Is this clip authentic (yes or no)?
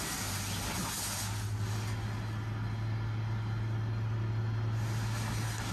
yes